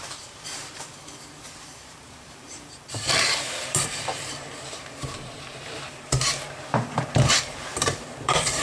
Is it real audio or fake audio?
fake